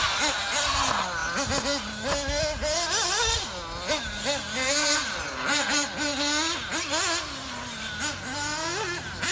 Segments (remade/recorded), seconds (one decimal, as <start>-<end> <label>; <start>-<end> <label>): 0.0-9.3 recorded